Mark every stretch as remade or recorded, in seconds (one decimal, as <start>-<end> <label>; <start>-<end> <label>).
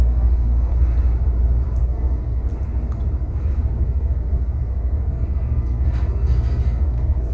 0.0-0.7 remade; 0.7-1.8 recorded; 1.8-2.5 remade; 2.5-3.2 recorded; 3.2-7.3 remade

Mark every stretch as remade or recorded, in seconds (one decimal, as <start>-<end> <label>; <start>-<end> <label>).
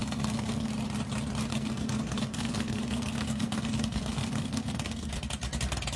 0.0-0.7 remade; 0.7-1.5 recorded; 1.5-5.1 remade; 5.1-6.0 recorded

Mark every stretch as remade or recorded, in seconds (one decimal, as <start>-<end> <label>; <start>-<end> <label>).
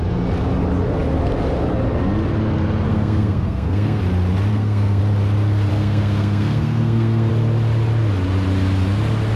0.0-2.9 recorded; 2.9-4.0 remade; 4.0-4.5 recorded; 4.5-5.0 remade; 5.0-5.7 recorded; 5.7-7.3 remade; 7.3-9.4 recorded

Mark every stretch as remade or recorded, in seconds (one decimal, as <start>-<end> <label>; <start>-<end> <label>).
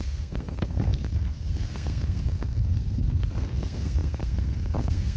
0.0-5.2 remade